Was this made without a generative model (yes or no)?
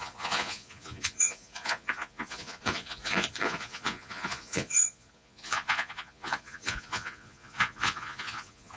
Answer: no